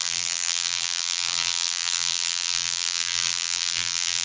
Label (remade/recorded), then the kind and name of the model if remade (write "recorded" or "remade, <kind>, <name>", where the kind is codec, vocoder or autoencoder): remade, vocoder, BigVGAN v2